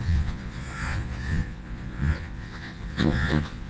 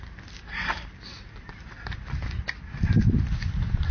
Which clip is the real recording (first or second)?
second